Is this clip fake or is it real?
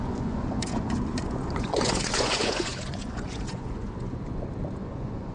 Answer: fake